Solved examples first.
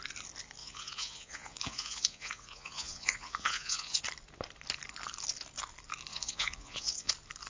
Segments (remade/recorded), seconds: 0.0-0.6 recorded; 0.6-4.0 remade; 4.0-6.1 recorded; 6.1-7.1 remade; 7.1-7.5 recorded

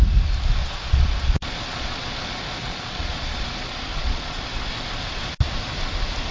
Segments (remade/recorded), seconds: 0.0-0.6 recorded; 0.6-2.2 remade; 2.2-2.6 recorded; 2.6-4.7 remade; 4.7-6.3 recorded

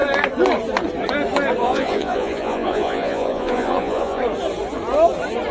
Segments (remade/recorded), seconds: 0.0-1.6 recorded; 1.6-4.2 remade; 4.2-5.5 recorded

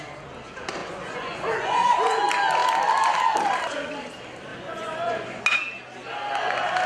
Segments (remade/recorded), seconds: 0.0-0.8 recorded; 0.8-2.2 remade; 2.2-4.5 recorded; 4.5-5.4 remade; 5.4-6.9 recorded

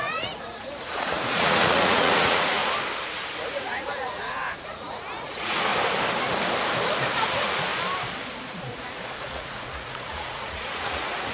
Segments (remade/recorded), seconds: 0.0-2.6 remade; 2.6-3.5 recorded; 3.5-5.7 remade; 5.7-7.3 recorded; 7.3-7.7 remade; 7.7-8.3 recorded; 8.3-11.3 remade

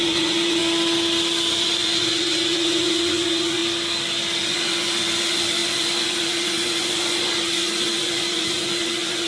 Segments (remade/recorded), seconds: 0.0-0.6 remade; 0.6-1.5 recorded; 1.5-3.6 remade; 3.6-4.4 recorded; 4.4-9.3 remade

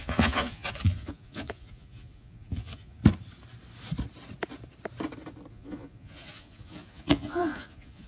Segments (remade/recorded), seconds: 0.0-3.0 remade; 3.0-5.5 recorded; 5.5-8.1 remade

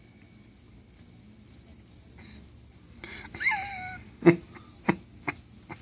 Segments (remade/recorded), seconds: 0.0-5.8 recorded